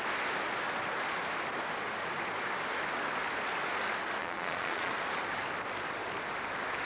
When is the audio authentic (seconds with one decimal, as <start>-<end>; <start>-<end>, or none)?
0.0-4.2; 4.9-6.8